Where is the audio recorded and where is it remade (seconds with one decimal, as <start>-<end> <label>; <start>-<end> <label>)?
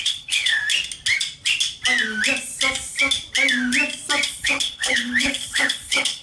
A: 0.0-0.6 remade; 0.6-4.3 recorded; 4.3-6.2 remade